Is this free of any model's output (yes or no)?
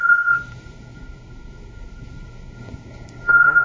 no